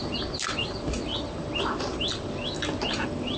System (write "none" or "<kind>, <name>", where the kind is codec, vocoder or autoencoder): none